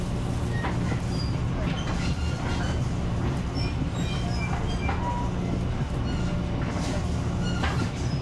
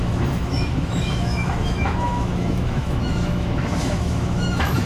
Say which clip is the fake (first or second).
second